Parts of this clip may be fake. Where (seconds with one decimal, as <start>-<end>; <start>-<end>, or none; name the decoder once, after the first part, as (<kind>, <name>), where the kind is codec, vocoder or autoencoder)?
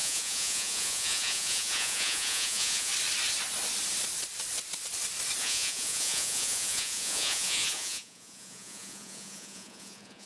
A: 0.0-2.9 (vocoder, Vocos); 5.4-10.3